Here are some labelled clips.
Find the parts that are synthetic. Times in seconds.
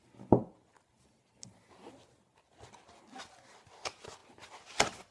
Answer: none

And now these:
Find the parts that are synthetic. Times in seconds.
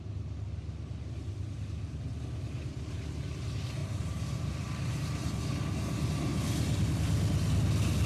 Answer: 3.8-5.3 (vocoder, BigVGAN v2)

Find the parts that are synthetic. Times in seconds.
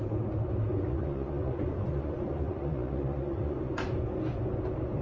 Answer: 0.7-3.7 (vocoder, Vocos)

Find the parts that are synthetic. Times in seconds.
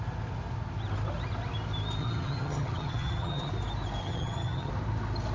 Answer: 2.0-3.5 (vocoder, HiFi-GAN); 4.0-4.7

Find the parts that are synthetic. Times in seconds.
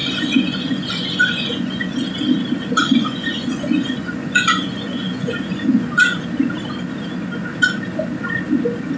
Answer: 0.0-1.9 (vocoder, Vocos); 2.9-6.2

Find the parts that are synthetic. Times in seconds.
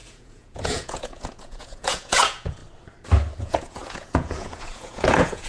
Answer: 0.0-2.6 (vocoder, Vocos); 3.4-5.5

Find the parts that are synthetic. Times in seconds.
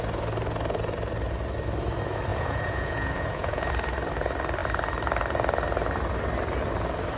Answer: 2.3-3.7 (vocoder, Vocos)